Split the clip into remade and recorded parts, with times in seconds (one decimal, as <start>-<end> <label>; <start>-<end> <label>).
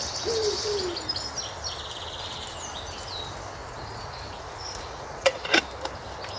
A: 0.0-3.6 recorded; 3.6-5.6 remade; 5.6-6.4 recorded